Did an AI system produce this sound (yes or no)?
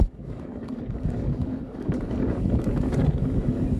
yes